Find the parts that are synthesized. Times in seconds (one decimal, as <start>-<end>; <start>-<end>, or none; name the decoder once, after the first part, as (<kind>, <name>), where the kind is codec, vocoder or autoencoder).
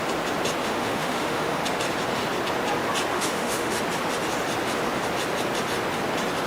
0.6-1.6 (autoencoder, DAC-VAE); 3.1-3.8